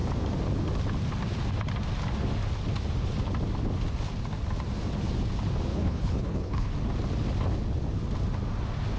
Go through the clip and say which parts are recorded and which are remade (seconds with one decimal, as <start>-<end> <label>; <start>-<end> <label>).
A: 0.0-5.7 recorded; 5.7-6.7 remade; 6.7-9.0 recorded